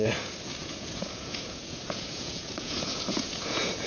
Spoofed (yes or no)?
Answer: yes